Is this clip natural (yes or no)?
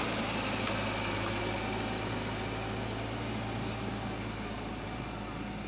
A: yes